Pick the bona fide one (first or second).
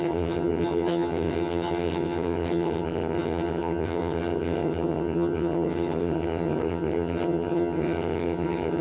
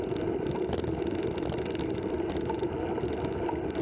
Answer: second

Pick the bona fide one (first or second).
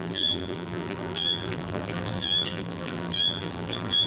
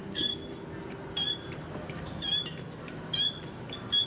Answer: second